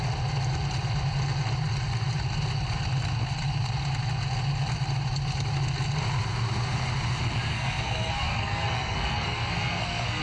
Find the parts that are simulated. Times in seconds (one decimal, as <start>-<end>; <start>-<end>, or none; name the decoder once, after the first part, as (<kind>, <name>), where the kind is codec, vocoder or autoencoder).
7.5-10.2 (codec, SNAC)